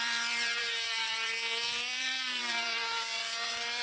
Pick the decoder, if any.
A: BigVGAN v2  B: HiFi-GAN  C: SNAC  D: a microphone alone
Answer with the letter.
A